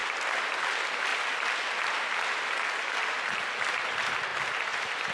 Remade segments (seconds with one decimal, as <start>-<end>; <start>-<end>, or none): 0.0-0.6